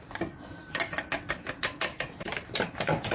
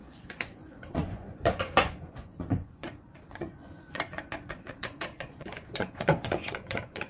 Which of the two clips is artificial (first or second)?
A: second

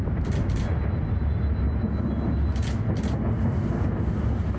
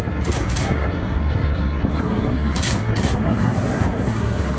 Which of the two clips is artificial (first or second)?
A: second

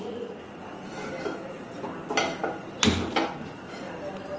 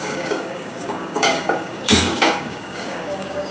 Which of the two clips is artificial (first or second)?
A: second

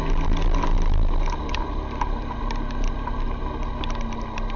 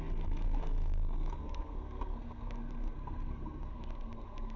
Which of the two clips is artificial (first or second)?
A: second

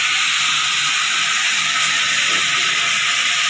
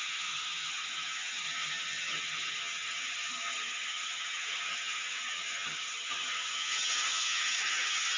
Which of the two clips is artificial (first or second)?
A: second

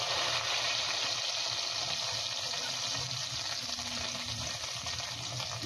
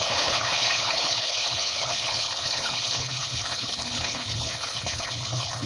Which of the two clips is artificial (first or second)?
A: second